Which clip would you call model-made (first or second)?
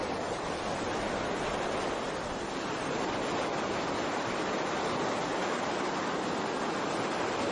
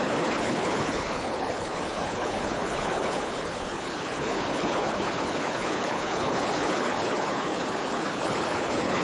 second